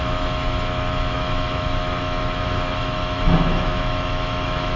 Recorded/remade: remade